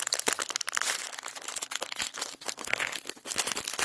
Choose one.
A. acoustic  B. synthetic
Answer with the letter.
A